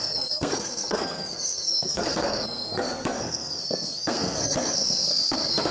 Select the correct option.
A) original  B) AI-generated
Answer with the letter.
B